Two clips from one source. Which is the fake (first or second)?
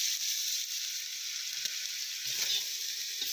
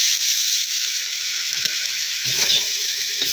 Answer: second